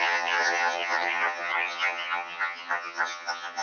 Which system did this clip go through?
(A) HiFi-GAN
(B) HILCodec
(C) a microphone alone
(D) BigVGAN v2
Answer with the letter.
A